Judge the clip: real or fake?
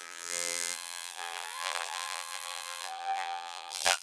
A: fake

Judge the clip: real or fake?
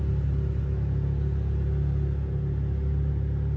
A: real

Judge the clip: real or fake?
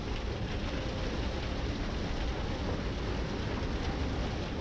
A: real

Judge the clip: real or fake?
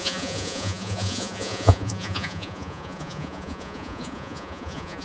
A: fake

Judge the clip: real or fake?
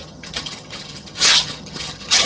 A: fake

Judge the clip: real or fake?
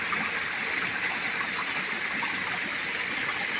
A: real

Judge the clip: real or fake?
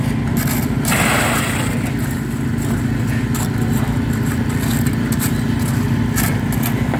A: real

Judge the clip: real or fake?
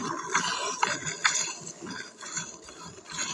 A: fake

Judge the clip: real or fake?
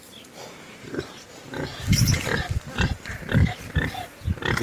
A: real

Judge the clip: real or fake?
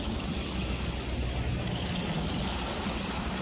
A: real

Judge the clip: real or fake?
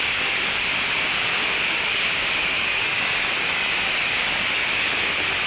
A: fake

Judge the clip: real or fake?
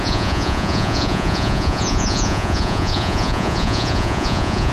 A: fake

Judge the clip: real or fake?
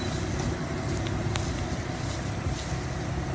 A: real